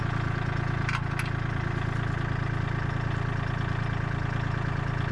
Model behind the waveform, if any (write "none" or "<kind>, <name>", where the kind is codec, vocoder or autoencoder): none